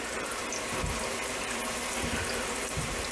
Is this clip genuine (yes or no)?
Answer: yes